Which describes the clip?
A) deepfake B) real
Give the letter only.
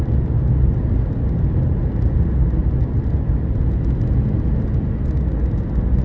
B